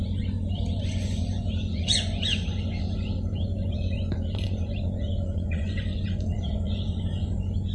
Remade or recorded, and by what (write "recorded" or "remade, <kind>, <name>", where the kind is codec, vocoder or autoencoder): remade, vocoder, Vocos